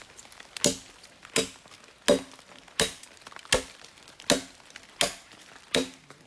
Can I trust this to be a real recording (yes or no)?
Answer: yes